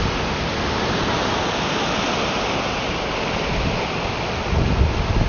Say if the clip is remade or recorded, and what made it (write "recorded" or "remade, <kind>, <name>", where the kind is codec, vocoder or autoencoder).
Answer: recorded